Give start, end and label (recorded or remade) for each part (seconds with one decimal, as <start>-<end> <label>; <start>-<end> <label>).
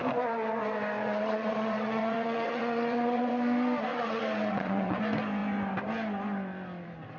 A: 0.0-1.0 recorded; 1.0-3.3 remade; 3.3-3.9 recorded; 3.9-5.0 remade; 5.0-7.2 recorded